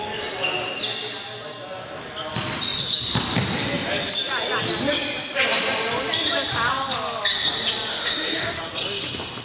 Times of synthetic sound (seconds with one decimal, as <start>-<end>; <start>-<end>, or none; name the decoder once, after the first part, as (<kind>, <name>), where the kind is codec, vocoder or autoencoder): 7.9-8.6 (autoencoder, DAC-VAE)